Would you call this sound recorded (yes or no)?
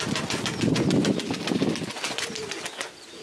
yes